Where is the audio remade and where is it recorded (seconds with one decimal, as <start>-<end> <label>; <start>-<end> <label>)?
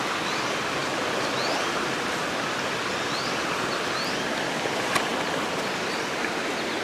0.0-6.8 recorded